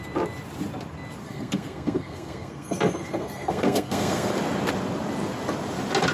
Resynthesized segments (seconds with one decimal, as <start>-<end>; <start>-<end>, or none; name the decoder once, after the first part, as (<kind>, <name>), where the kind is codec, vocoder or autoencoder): 1.2-4.3 (codec, SNAC)